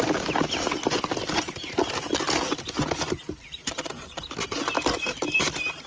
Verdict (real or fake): real